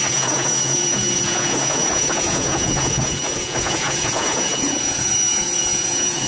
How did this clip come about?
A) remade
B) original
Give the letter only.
A